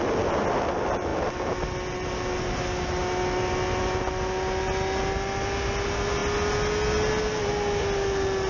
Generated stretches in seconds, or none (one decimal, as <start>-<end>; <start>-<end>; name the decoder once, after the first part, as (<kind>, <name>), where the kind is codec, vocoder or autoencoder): none